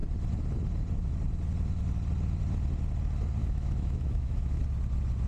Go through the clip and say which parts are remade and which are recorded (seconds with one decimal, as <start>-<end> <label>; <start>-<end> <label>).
0.0-3.4 recorded; 3.4-4.6 remade; 4.6-5.3 recorded